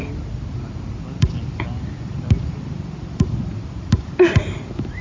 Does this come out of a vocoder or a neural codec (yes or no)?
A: no